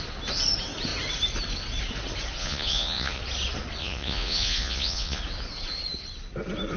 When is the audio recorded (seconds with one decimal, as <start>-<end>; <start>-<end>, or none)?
0.0-2.4; 3.2-3.8; 5.2-6.8